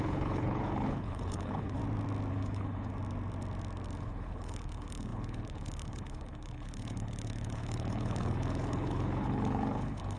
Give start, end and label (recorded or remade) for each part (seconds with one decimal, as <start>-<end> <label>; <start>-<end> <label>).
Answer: 0.0-1.8 remade; 1.8-2.3 recorded; 2.3-2.9 remade; 2.9-4.0 recorded; 4.0-10.2 remade